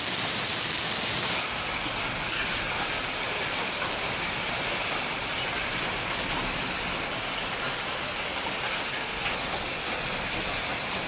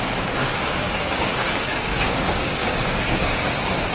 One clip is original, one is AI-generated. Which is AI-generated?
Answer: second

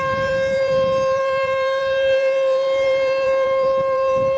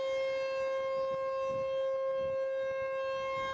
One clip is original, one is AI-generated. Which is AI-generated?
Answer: first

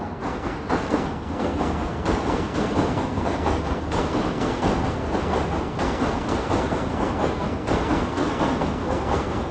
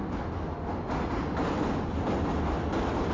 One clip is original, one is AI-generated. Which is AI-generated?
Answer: first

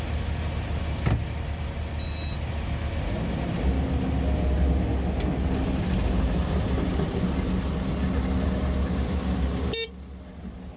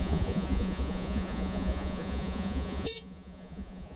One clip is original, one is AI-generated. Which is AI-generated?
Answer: second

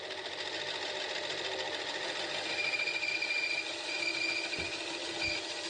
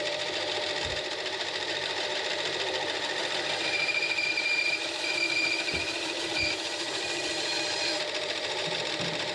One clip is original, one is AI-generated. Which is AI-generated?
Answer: second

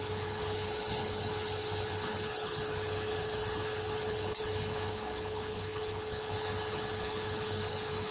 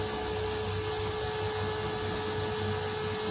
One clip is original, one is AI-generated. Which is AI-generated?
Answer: first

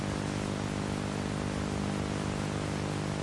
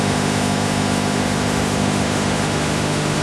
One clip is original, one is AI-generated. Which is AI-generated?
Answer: second